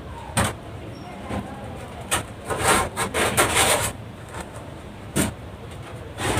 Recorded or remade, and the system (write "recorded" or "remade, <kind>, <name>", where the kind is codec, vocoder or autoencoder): remade, vocoder, BigVGAN v2